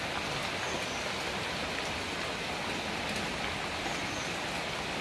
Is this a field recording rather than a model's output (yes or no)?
yes